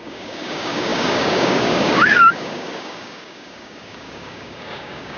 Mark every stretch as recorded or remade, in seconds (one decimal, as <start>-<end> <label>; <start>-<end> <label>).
0.0-5.2 remade